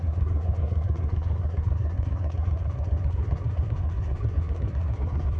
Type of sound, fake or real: fake